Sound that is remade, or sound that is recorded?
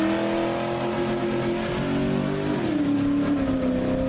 recorded